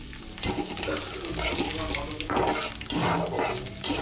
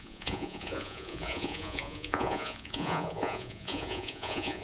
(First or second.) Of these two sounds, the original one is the first